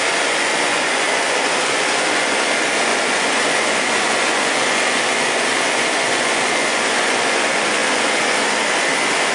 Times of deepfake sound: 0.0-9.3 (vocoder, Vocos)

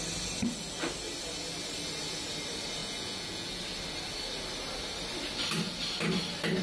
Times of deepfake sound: 2.8-3.6 (vocoder, Vocos)